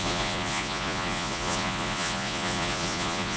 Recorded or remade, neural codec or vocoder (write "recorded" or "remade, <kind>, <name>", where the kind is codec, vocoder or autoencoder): remade, vocoder, Vocos